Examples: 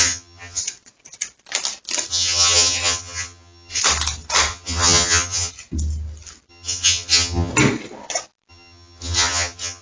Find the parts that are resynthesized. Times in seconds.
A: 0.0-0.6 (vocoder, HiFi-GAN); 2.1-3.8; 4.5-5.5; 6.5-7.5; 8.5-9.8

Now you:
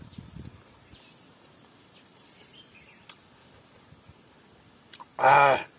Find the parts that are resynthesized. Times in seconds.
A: none

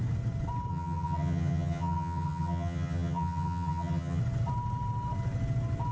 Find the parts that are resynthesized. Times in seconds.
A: 0.7-4.2 (vocoder, HiFi-GAN)

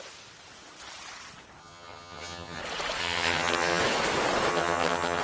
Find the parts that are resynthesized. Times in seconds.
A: 1.6-2.6 (vocoder, HiFi-GAN); 3.0-3.8; 4.5-5.2

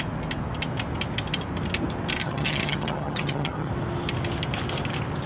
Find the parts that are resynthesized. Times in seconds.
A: 2.2-3.7 (vocoder, HiFi-GAN)

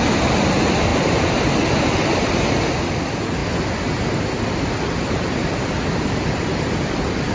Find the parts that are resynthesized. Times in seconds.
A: none